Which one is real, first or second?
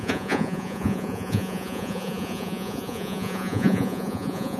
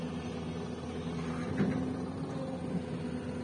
second